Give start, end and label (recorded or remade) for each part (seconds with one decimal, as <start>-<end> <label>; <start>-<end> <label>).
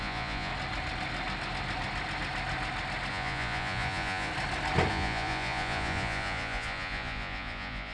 0.0-0.5 remade; 0.5-3.1 recorded; 3.1-4.3 remade; 4.3-4.9 recorded; 4.9-7.9 remade